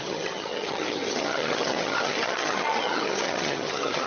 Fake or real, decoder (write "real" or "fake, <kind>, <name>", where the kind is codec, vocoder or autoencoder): fake, vocoder, HiFi-GAN